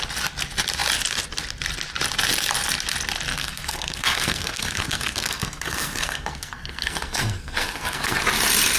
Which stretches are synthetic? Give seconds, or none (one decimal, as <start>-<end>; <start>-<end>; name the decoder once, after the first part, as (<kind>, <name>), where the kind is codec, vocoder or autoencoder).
3.3-8.2 (codec, SNAC)